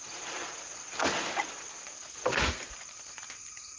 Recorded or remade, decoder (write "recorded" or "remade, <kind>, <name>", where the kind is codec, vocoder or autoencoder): recorded